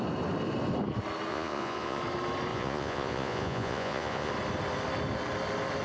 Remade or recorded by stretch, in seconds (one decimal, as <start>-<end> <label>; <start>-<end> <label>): 0.0-1.3 recorded; 1.3-2.0 remade; 2.0-2.5 recorded; 2.5-4.3 remade; 4.3-5.8 recorded